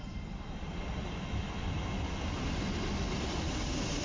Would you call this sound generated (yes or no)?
no